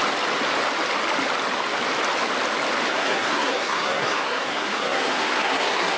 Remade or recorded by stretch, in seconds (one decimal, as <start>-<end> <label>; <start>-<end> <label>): 0.0-2.9 recorded; 2.9-6.0 remade